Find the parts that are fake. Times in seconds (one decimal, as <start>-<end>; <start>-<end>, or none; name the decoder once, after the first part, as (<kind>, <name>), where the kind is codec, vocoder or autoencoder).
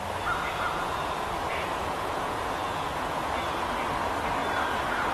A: 0.5-3.6 (vocoder, Vocos)